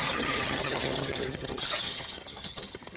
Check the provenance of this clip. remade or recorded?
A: remade